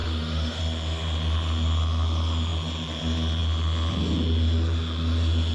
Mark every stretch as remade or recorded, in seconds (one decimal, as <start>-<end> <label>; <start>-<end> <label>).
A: 0.0-0.6 remade; 0.6-5.5 recorded